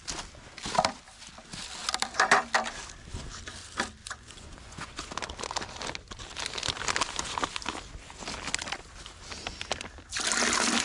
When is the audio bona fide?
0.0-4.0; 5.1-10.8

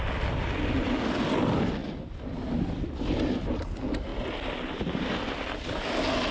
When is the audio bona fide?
0.0-6.3

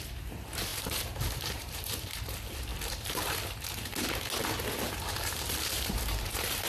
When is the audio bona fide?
3.9-5.2

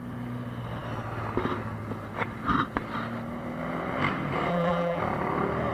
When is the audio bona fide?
0.0-4.5; 5.0-5.7

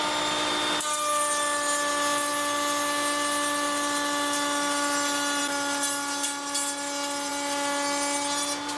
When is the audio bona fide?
0.0-8.8

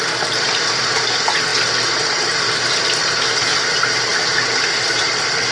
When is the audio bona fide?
0.0-5.5

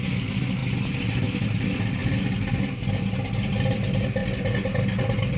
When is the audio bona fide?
0.0-5.4

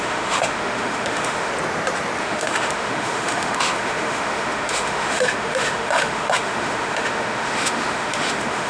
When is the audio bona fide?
1.5-2.2